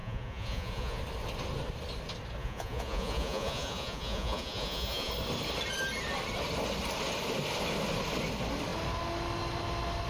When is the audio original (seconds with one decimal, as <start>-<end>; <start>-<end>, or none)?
1.0-2.4; 5.1-10.1